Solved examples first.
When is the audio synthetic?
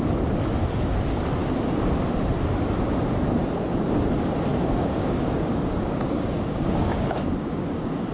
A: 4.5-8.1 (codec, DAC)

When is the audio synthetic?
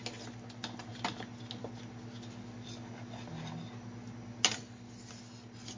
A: none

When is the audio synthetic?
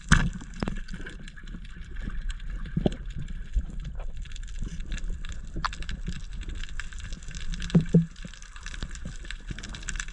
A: none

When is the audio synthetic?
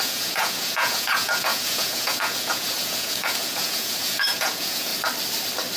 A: 0.0-4.9 (vocoder, Vocos)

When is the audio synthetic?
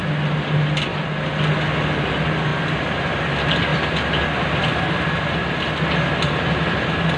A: 3.7-5.6 (vocoder, BigVGAN v2)